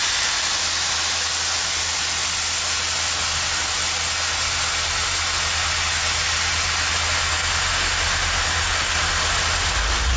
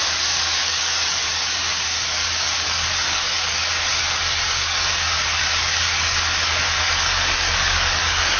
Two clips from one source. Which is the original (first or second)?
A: first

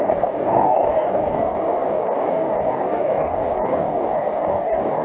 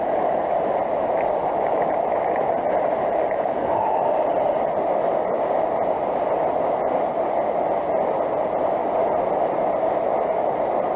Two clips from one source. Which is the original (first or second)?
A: second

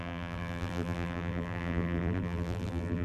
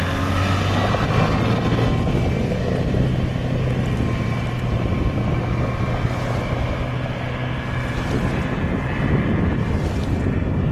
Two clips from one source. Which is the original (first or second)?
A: second